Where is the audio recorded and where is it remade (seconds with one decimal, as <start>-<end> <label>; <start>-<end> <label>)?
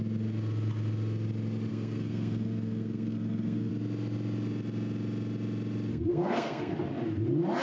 0.0-1.7 recorded; 1.7-3.7 remade; 3.7-5.9 recorded; 5.9-6.7 remade; 6.7-7.6 recorded